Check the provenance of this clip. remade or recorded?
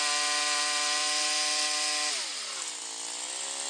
recorded